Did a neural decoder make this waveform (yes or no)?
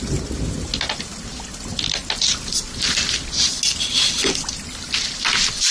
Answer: no